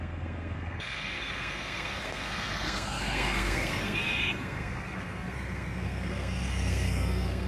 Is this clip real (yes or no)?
no